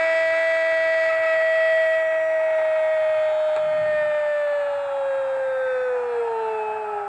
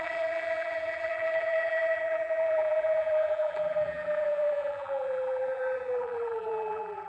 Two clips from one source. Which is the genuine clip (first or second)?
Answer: first